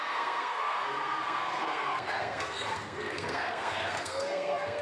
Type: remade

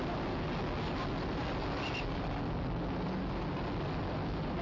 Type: recorded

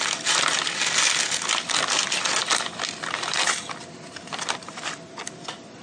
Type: recorded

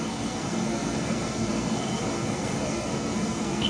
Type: remade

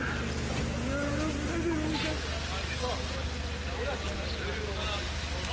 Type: recorded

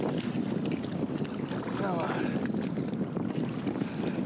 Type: recorded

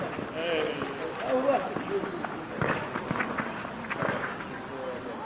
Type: recorded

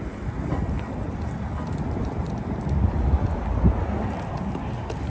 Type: recorded